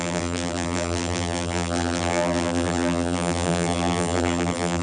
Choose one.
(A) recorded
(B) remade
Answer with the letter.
B